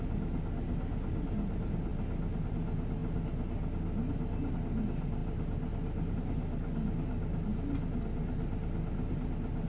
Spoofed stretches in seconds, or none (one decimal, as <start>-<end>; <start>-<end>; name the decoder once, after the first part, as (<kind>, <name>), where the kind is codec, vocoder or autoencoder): none

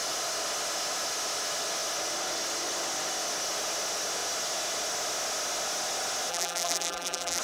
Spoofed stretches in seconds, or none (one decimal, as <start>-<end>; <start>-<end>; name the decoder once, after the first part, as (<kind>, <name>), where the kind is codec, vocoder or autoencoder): 6.3-7.4 (vocoder, BigVGAN v2)

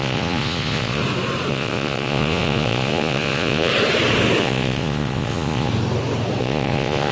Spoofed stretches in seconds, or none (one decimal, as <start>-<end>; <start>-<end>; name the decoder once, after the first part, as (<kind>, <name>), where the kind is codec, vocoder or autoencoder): 0.0-1.0 (vocoder, Vocos); 1.5-3.7; 4.4-5.7; 6.4-7.1